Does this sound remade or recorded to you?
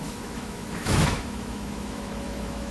remade